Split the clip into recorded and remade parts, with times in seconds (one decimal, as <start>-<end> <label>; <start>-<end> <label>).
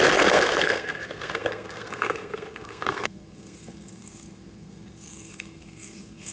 0.0-6.3 remade